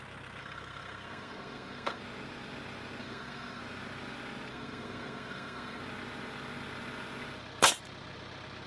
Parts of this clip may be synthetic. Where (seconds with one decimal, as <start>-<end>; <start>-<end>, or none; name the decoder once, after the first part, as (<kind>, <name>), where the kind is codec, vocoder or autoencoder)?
0.4-2.0 (codec, SNAC); 3.0-3.6; 4.5-5.8